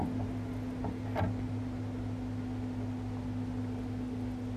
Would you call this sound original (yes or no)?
yes